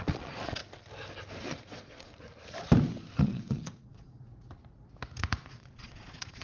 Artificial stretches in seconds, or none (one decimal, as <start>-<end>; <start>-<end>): 0.0-0.6; 1.4-2.1; 3.2-4.3; 5.5-6.4